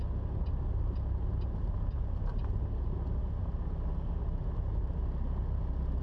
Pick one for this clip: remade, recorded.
recorded